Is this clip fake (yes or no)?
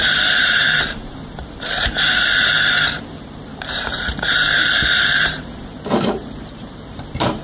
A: yes